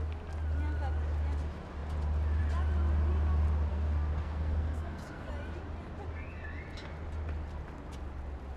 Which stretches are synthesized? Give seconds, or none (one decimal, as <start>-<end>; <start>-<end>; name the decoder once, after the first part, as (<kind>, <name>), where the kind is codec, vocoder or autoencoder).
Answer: 3.7-5.3 (codec, SNAC)